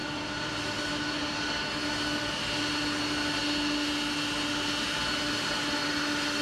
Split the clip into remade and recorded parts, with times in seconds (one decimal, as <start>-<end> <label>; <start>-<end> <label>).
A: 0.0-6.4 recorded